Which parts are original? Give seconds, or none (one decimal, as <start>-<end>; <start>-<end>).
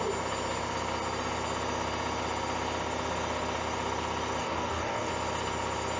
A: 0.0-4.4; 5.1-6.0